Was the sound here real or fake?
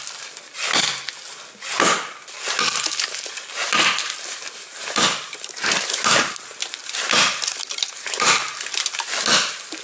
real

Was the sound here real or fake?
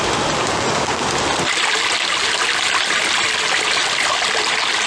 real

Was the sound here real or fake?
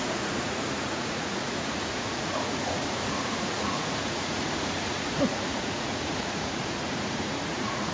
fake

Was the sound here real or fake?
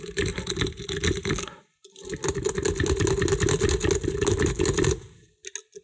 real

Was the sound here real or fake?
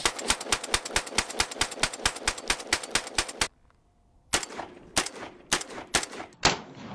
real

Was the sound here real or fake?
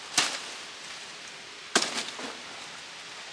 real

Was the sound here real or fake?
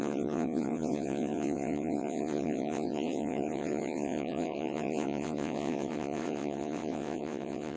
fake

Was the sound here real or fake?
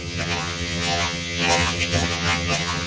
fake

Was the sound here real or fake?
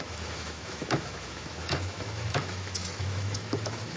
fake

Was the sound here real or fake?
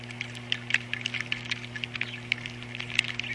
real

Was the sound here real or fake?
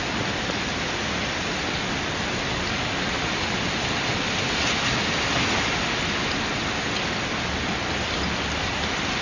real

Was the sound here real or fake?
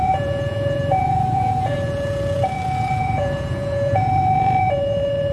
fake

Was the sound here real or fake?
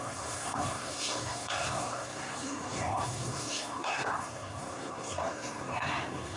fake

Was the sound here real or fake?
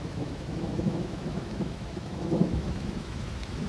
fake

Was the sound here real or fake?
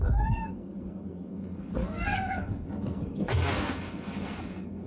fake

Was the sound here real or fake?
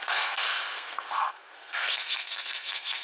fake